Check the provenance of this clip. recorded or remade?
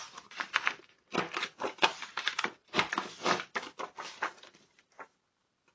recorded